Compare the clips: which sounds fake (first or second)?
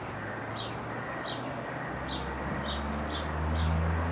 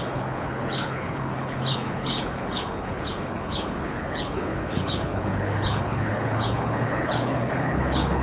second